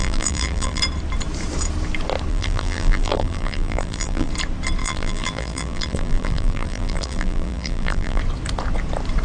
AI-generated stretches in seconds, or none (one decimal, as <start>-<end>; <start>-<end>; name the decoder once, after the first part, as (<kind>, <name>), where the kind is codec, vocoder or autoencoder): 0.0-0.8 (vocoder, BigVGAN v2); 2.3-4.3; 4.8-8.2